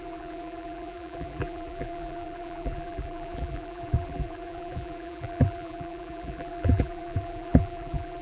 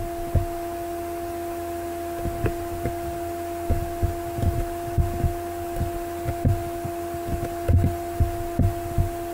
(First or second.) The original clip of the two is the second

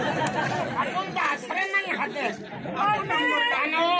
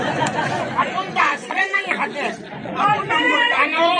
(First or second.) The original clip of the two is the first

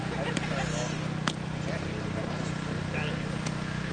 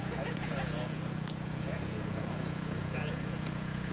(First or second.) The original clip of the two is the first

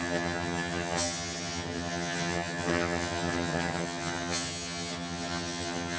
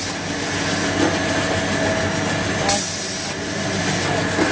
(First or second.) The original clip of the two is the second